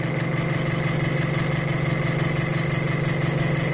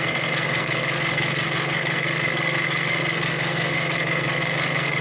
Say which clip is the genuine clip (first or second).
first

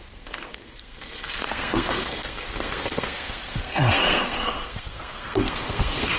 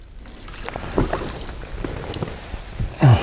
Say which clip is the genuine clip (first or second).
second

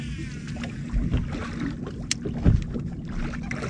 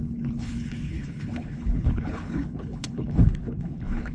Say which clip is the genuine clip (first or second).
first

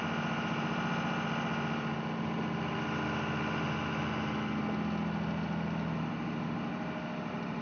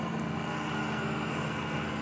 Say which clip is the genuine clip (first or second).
first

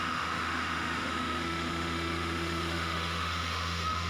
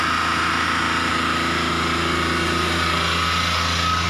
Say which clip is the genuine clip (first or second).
second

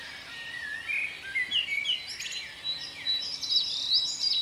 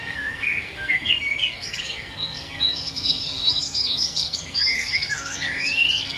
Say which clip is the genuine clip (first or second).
first